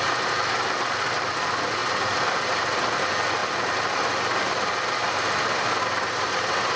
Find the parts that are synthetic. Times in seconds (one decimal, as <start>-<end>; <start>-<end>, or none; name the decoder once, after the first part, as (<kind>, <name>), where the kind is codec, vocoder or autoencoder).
none